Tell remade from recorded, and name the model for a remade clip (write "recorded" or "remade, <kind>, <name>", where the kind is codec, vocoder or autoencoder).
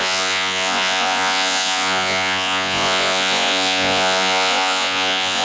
remade, vocoder, Vocos